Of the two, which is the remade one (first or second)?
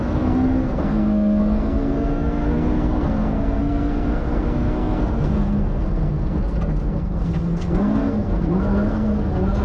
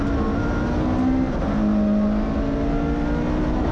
first